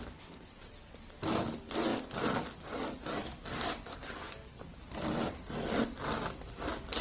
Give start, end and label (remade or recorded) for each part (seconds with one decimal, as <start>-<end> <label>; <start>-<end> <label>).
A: 0.0-7.0 recorded